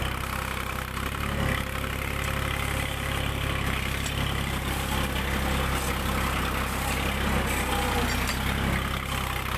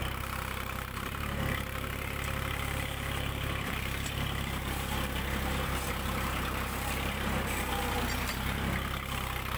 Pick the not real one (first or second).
second